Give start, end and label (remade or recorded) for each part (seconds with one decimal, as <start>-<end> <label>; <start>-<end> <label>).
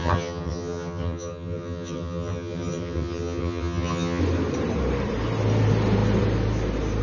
0.0-4.2 remade; 4.2-7.0 recorded